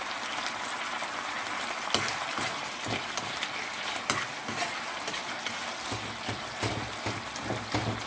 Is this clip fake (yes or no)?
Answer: no